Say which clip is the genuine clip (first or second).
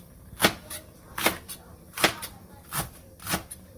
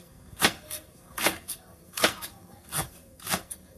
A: first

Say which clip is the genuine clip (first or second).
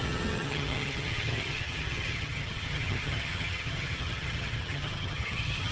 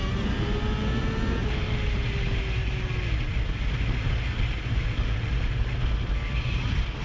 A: second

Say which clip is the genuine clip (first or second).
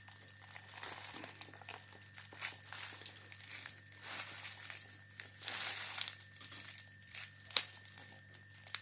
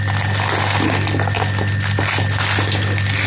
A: second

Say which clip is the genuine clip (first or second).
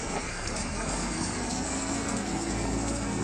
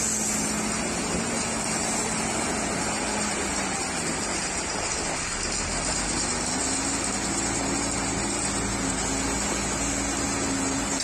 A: second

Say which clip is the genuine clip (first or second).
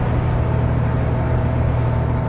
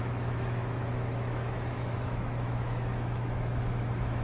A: first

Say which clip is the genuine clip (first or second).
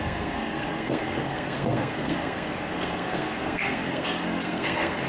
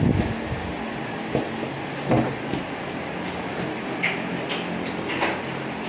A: second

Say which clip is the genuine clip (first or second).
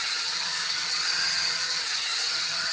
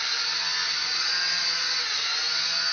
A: second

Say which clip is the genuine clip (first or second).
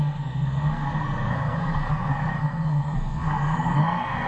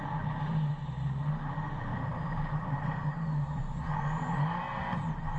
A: second